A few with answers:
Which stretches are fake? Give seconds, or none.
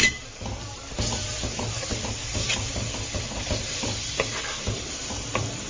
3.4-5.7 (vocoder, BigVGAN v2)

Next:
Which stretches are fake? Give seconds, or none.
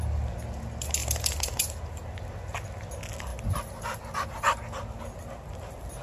1.0-1.8 (vocoder, BigVGAN v2); 3.3-5.0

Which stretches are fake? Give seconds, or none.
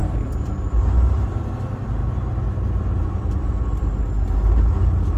none